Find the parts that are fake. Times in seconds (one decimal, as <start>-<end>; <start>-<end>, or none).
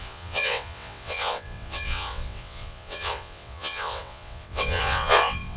0.0-5.6